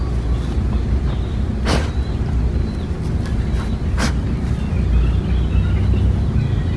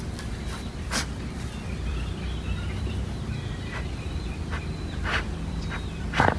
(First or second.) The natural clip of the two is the first